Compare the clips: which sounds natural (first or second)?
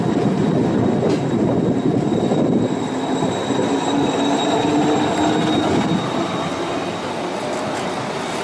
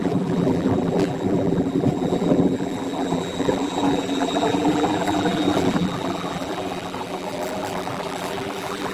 first